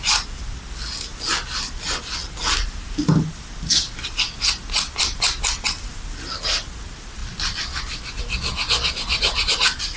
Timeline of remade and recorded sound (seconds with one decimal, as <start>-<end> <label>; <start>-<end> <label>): 0.0-10.0 recorded